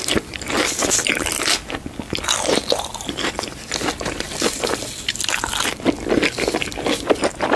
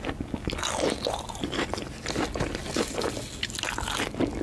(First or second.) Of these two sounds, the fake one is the first